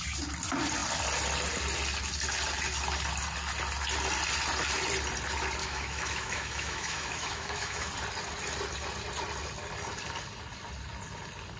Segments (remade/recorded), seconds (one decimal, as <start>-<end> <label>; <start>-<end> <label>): 0.0-5.6 recorded; 5.6-7.9 remade; 7.9-11.6 recorded

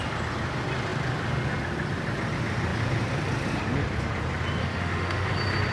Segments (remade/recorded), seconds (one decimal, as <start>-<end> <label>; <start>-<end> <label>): 0.0-4.6 recorded; 4.6-5.3 remade; 5.3-5.7 recorded

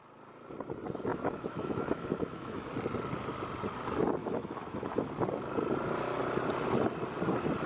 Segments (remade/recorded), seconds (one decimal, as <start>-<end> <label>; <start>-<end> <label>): 0.0-1.1 recorded; 1.1-2.7 remade; 2.7-4.2 recorded; 4.2-5.1 remade; 5.1-7.7 recorded

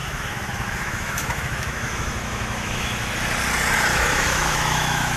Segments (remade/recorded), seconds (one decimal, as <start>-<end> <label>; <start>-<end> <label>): 0.0-3.1 remade; 3.1-3.9 recorded; 3.9-5.2 remade

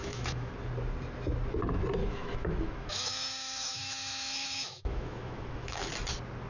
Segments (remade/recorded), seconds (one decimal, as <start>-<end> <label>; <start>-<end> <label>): 0.0-0.5 remade; 0.5-2.0 recorded; 2.0-5.9 remade; 5.9-6.5 recorded